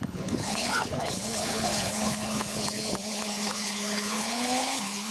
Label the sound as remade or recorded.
remade